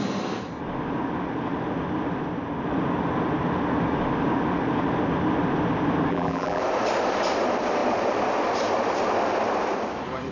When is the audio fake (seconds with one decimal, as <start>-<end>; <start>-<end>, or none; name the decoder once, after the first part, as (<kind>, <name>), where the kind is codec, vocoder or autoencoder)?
6.1-6.6 (vocoder, BigVGAN v2)